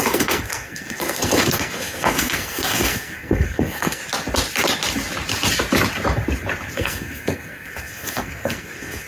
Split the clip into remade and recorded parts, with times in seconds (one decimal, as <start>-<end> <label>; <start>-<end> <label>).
0.0-4.0 remade; 4.0-6.7 recorded; 6.7-9.1 remade